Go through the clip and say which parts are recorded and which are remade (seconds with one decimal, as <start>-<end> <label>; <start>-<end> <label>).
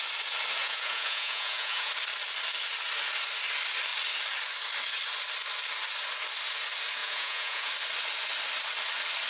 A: 0.0-0.6 recorded; 0.6-1.9 remade; 1.9-7.0 recorded; 7.0-7.7 remade; 7.7-9.3 recorded